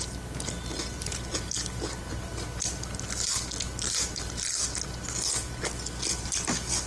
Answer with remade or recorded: recorded